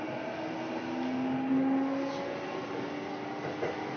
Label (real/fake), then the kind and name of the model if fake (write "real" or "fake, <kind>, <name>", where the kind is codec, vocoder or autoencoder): real